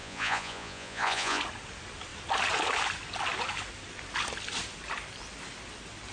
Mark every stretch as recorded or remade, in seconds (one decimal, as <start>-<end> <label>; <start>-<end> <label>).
0.0-1.4 remade; 1.4-6.1 recorded